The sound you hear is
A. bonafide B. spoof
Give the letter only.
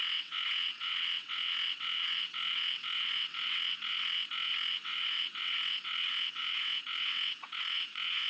B